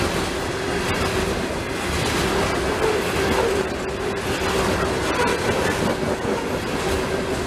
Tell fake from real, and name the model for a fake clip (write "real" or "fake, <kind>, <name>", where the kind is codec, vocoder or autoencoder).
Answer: real